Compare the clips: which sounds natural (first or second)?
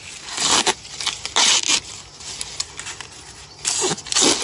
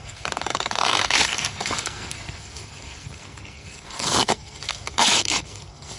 first